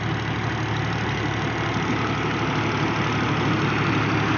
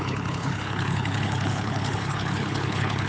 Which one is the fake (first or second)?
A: second